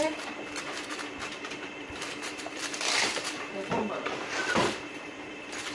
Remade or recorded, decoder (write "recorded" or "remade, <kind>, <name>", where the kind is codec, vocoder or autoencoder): remade, vocoder, BigVGAN v2